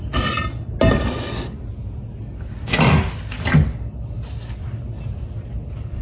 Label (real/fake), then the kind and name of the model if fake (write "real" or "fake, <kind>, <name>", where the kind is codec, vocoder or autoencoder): real